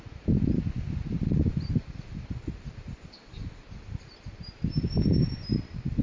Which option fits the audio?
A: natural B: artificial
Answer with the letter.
A